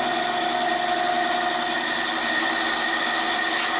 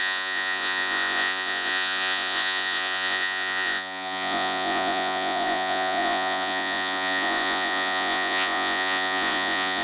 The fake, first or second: second